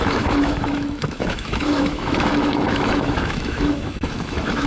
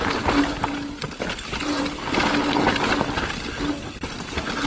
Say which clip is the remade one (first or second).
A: first